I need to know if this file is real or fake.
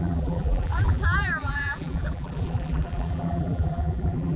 fake